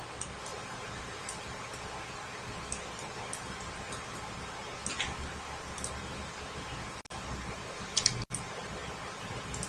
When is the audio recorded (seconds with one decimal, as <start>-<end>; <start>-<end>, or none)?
1.7-3.0; 4.8-6.0; 8.8-9.7